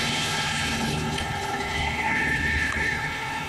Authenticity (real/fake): fake